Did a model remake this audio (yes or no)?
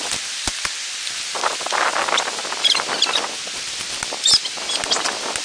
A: no